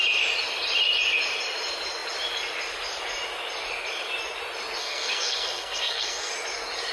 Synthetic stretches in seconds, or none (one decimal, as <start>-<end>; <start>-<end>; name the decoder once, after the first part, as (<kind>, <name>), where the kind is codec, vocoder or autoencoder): 4.8-6.3 (codec, SNAC)

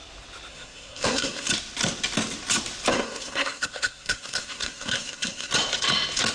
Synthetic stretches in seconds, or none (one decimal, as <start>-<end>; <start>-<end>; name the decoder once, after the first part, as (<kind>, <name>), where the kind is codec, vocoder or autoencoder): 0.5-1.5 (codec, SNAC); 2.9-5.5

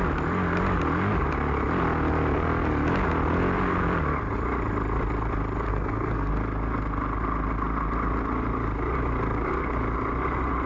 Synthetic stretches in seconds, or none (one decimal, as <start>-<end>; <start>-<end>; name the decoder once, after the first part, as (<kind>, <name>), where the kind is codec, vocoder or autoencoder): 5.7-6.3 (codec, SNAC)

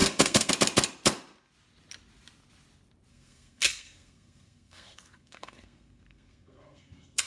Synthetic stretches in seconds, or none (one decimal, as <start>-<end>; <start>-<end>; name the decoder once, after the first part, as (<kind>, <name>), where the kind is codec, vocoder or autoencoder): 0.0-0.5 (codec, SNAC); 3.1-7.3

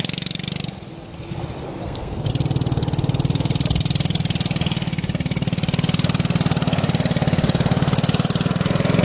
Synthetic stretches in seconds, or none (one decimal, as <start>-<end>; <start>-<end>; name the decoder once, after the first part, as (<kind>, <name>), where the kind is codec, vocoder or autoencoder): 1.8-2.3 (codec, SNAC)

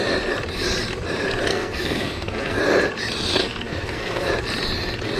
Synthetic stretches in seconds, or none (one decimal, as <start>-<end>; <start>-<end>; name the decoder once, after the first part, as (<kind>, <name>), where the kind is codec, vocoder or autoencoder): 1.5-2.6 (codec, SNAC); 3.4-4.3

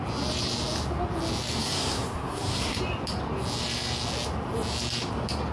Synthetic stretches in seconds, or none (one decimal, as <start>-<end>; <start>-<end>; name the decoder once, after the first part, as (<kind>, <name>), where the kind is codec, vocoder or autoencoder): 1.6-2.8 (codec, SNAC)